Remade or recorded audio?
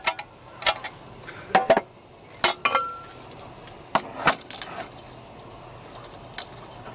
recorded